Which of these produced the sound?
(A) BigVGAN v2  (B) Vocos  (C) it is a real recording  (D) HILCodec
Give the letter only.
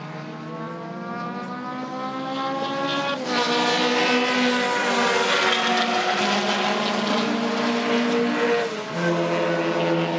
C